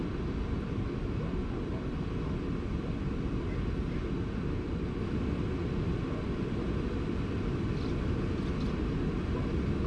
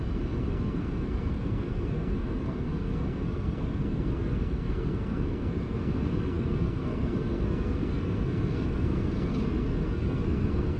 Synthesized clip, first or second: second